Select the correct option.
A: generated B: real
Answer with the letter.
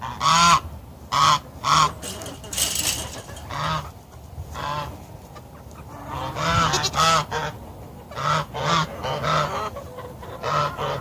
B